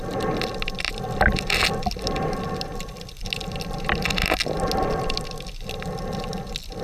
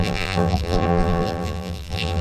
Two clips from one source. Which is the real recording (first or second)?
first